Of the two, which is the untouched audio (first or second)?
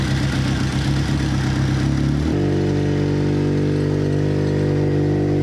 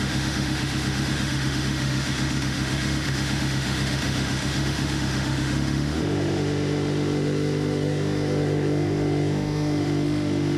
first